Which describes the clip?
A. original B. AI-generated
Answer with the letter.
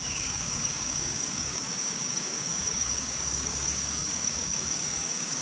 B